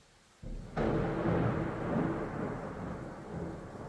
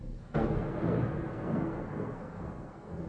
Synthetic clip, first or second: second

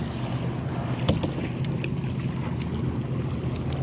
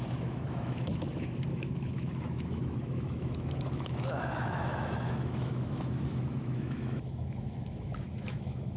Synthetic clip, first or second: second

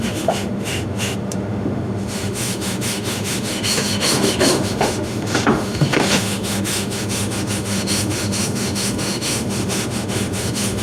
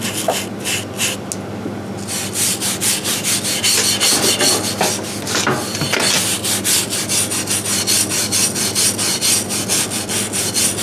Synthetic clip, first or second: first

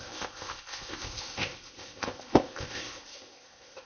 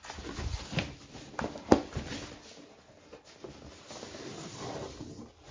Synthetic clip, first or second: first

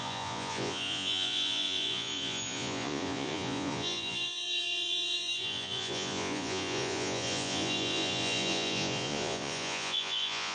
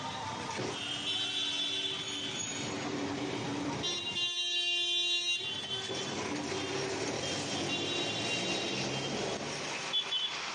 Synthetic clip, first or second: first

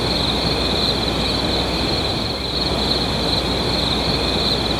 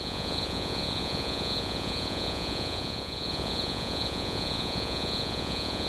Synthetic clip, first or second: second